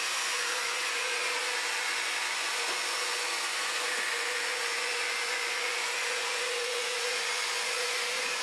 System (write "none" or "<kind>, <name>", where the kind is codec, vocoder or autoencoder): vocoder, Vocos